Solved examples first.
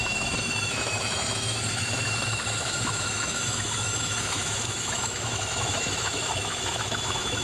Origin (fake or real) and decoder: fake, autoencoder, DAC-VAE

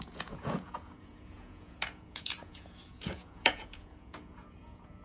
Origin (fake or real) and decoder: fake, vocoder, Vocos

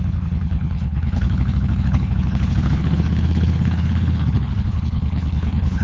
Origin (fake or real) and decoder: fake, codec, HILCodec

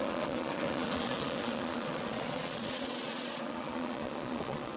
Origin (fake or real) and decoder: fake, vocoder, Vocos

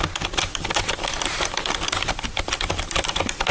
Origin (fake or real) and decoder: real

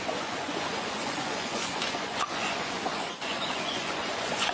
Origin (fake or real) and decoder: fake, vocoder, Vocos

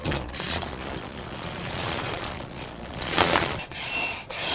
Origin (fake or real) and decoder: fake, vocoder, Vocos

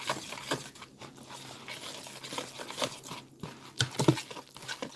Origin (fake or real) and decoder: real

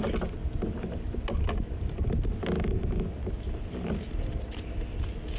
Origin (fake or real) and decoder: real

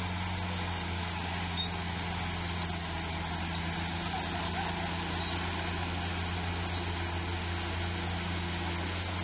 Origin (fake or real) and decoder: real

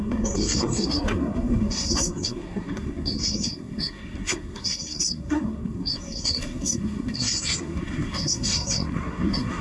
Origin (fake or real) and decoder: fake, codec, SNAC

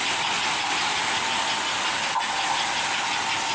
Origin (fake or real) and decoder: real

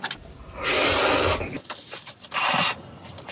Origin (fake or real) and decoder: real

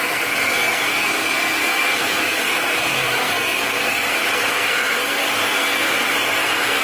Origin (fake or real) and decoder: fake, codec, SNAC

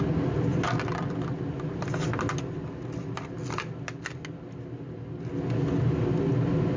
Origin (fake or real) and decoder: real